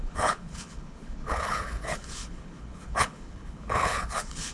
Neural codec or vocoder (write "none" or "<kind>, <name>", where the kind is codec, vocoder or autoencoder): codec, HILCodec